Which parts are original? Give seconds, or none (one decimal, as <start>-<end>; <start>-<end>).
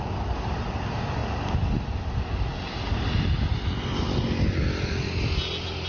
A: 0.0-5.9